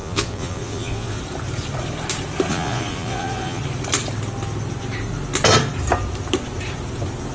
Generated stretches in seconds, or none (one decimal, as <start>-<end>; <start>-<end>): 0.0-1.2; 2.5-3.6